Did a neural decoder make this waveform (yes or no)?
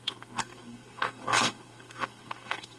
yes